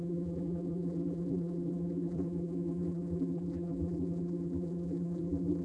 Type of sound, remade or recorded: remade